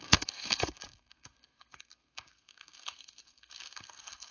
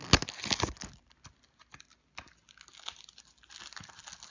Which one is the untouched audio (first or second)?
second